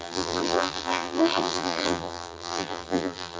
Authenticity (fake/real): fake